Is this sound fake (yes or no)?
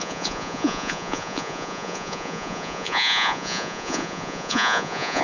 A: yes